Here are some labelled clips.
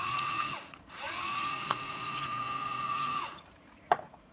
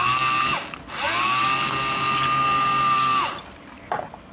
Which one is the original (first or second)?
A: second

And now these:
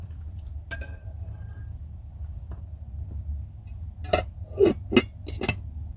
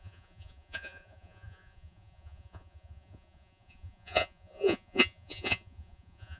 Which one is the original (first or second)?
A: first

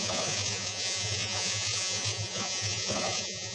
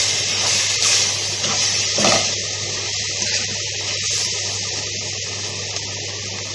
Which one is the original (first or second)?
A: second